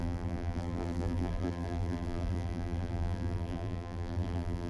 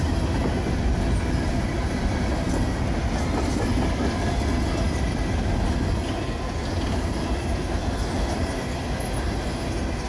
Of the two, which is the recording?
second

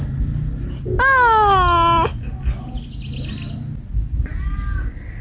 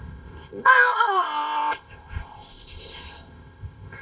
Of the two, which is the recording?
first